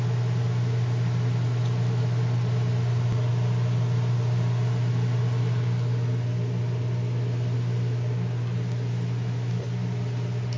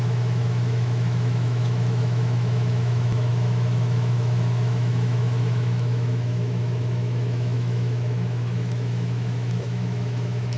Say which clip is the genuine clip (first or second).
first